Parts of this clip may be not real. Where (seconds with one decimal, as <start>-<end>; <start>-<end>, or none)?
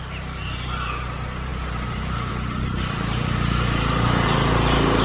none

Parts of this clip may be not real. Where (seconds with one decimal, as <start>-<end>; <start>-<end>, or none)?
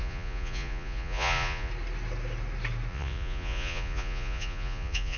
0.0-1.7; 2.9-5.2